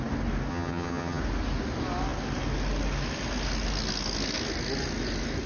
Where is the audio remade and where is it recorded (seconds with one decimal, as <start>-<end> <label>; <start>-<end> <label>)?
0.0-0.5 recorded; 0.5-1.2 remade; 1.2-5.5 recorded